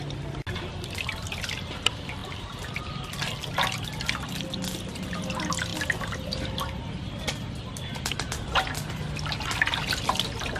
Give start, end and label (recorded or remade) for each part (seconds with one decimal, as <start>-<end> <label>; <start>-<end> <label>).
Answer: 0.0-2.2 recorded; 2.2-2.8 remade; 2.8-10.6 recorded

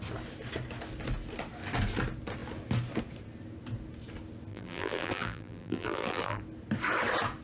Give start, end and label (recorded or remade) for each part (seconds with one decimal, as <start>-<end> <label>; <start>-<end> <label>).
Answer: 0.0-4.5 recorded; 4.5-6.4 remade; 6.4-7.4 recorded